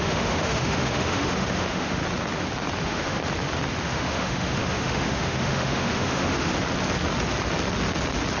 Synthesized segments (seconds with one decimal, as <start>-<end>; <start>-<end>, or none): 0.0-2.0; 2.8-3.2; 3.8-6.5